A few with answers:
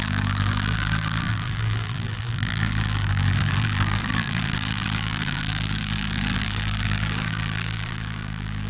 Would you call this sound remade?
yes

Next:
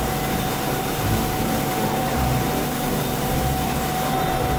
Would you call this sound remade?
yes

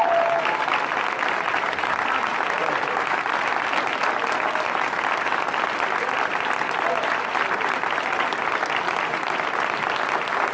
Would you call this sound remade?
no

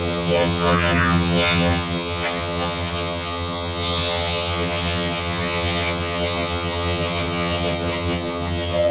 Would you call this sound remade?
yes